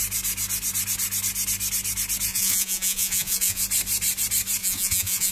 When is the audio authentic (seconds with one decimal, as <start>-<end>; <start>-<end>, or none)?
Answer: 0.0-2.3; 3.6-4.6